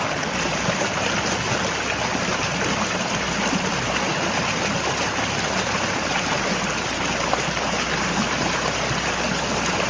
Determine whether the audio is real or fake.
real